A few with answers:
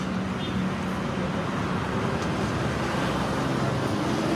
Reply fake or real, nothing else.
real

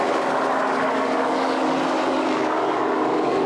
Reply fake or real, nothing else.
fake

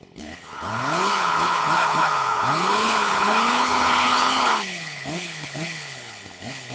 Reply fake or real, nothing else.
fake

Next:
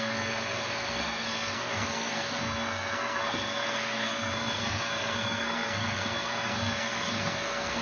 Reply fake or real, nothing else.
fake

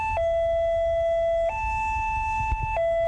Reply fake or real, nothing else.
real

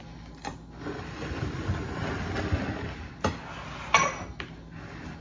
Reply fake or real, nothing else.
real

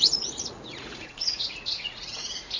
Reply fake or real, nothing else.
fake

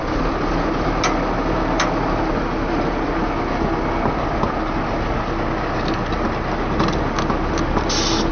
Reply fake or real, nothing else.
real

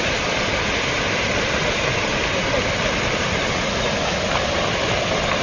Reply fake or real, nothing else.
real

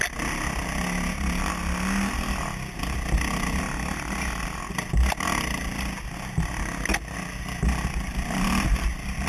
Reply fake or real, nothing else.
real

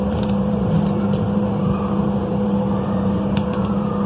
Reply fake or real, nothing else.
fake